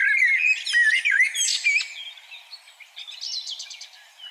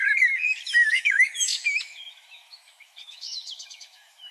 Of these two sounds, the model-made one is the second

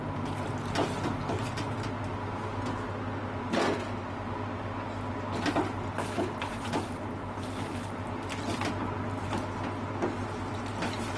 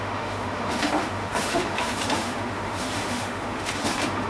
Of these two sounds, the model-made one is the second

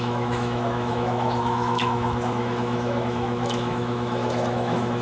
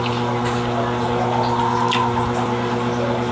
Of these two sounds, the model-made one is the first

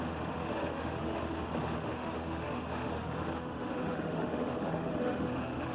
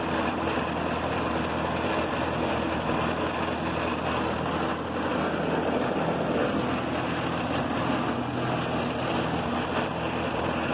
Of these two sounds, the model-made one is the first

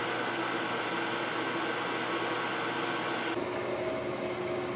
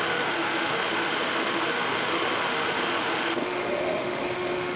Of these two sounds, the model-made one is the second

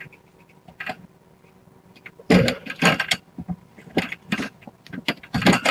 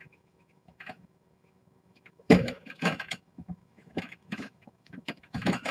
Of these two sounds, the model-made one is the second